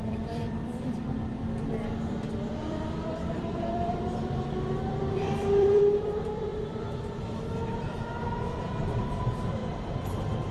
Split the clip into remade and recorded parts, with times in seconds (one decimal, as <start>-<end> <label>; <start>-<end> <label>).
0.0-1.4 remade; 1.4-2.1 recorded; 2.1-9.6 remade; 9.6-10.5 recorded